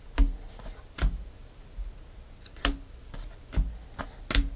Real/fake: real